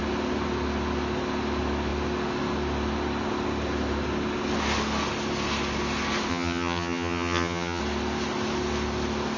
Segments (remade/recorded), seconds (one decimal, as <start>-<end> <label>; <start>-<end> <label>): 0.0-6.3 recorded; 6.3-7.8 remade; 7.8-9.4 recorded